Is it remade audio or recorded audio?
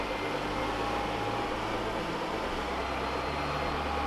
recorded